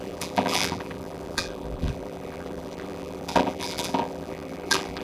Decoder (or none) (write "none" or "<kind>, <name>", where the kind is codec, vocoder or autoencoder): vocoder, BigVGAN v2